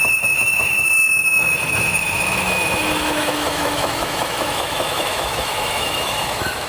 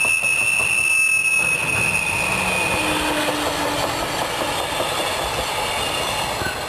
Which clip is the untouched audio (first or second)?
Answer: second